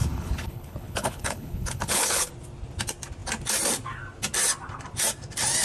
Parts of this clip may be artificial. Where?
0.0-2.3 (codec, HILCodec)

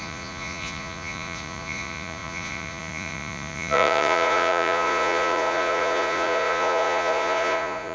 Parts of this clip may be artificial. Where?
0.0-7.9 (vocoder, Vocos)

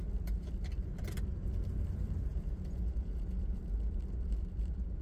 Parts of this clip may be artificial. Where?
2.3-3.6 (vocoder, Vocos)

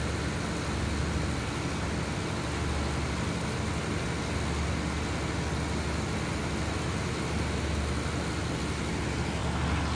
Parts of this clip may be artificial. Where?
none

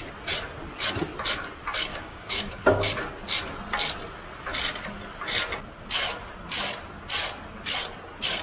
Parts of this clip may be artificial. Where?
1.9-2.9 (codec, DAC)

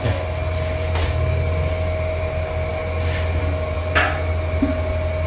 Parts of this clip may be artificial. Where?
none

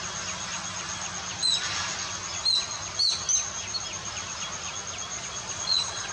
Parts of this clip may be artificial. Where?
5.1-6.1 (vocoder, Vocos)